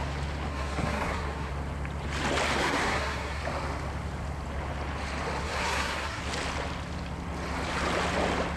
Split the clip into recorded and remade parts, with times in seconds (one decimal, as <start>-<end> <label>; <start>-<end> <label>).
0.0-0.5 recorded; 0.5-1.5 remade; 1.5-2.6 recorded; 2.6-3.4 remade; 3.4-5.4 recorded; 5.4-6.2 remade; 6.2-8.6 recorded